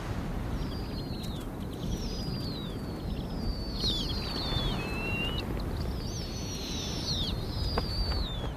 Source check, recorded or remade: recorded